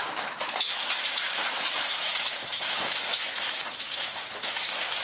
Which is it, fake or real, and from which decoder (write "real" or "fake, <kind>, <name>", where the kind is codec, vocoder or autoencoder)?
fake, autoencoder, DAC-VAE